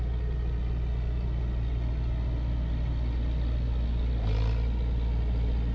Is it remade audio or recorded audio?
recorded